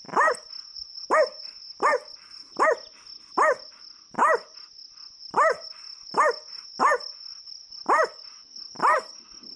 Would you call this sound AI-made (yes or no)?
no